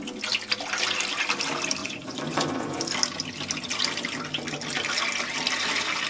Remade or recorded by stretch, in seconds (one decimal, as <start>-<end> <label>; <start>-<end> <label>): 0.0-1.8 recorded; 1.8-2.8 remade; 2.8-6.1 recorded